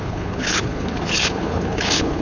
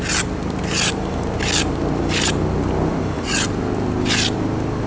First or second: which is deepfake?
first